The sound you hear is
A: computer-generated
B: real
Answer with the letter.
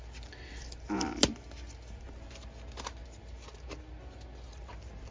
B